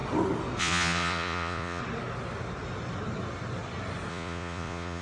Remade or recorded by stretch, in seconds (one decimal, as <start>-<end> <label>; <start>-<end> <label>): 0.0-0.6 recorded; 0.6-1.8 remade; 1.8-4.1 recorded; 4.1-5.0 remade